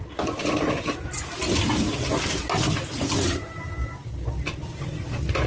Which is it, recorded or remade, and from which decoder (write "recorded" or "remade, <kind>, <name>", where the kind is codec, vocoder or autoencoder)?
recorded